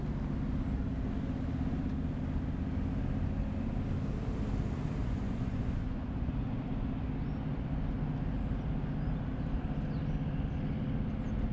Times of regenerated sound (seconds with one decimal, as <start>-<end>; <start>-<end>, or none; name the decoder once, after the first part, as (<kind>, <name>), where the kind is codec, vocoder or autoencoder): 5.0-6.3 (vocoder, Vocos)